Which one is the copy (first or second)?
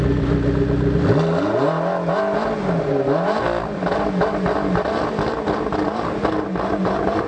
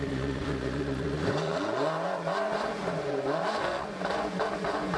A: second